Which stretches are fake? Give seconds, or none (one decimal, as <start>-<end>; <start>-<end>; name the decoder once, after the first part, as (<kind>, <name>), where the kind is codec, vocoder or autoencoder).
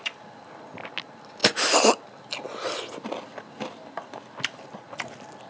none